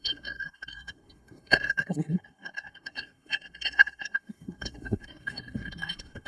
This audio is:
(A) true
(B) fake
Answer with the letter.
B